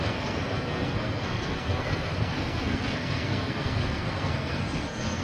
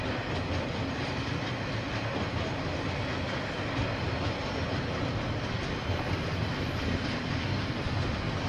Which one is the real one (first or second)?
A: second